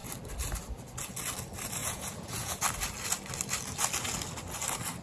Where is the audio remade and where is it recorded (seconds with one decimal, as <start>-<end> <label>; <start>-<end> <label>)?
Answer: 0.0-1.8 recorded; 1.8-2.6 remade; 2.6-5.0 recorded